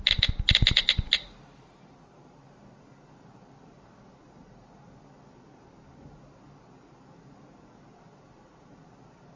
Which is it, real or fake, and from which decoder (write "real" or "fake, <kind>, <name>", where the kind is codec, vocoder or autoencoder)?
real